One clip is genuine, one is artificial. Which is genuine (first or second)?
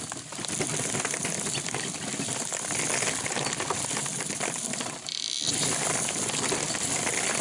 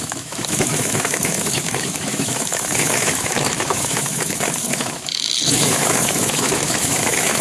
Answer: first